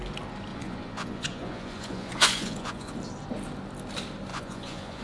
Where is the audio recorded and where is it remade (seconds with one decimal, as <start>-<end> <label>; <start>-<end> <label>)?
0.0-0.5 recorded; 0.5-2.9 remade; 2.9-4.3 recorded; 4.3-5.0 remade